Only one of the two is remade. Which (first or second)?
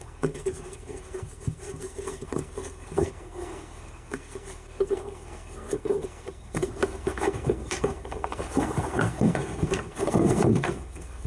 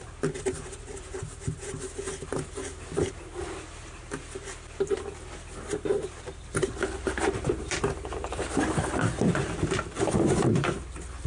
first